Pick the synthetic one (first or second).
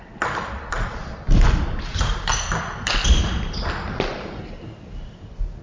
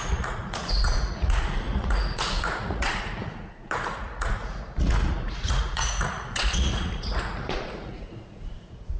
second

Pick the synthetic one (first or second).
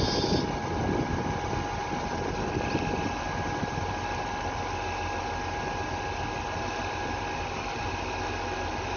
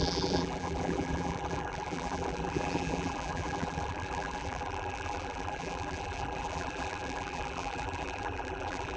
second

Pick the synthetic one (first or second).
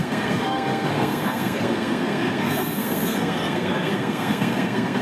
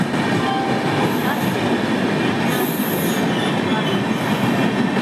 first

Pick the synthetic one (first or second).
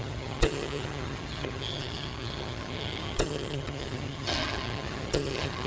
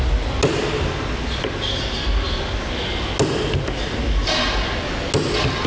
first